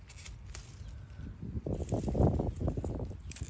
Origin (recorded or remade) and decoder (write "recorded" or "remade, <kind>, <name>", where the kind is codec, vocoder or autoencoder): recorded